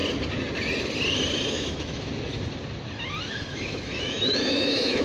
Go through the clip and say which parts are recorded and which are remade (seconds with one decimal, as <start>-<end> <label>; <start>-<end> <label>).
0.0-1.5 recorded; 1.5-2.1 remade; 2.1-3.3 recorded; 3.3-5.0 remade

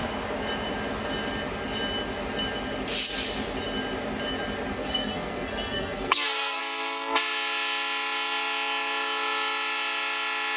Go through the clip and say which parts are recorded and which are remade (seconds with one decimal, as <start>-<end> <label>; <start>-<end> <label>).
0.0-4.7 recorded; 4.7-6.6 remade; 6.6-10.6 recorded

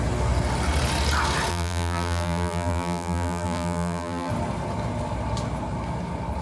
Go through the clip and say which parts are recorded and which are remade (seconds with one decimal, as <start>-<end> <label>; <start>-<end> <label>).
0.0-1.5 recorded; 1.5-4.3 remade; 4.3-6.4 recorded

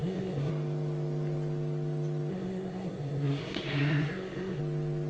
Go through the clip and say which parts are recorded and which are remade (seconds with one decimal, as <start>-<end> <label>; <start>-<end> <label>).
0.0-0.5 remade; 0.5-2.3 recorded; 2.3-4.6 remade; 4.6-5.1 recorded

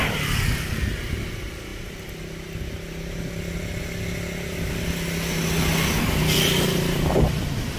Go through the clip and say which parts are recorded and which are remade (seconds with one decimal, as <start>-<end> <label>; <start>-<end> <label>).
0.0-7.8 recorded

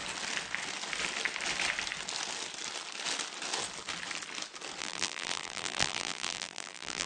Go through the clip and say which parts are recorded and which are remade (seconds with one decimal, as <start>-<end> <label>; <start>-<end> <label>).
0.0-4.8 recorded; 4.8-7.1 remade